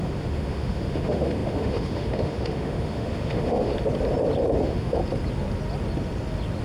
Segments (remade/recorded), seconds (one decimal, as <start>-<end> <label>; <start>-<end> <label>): 0.0-3.7 remade; 3.7-4.6 recorded; 4.6-5.0 remade; 5.0-6.6 recorded